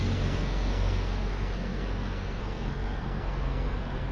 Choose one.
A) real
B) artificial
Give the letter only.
B